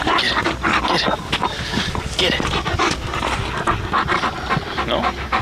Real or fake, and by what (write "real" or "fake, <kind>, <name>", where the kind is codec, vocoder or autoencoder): real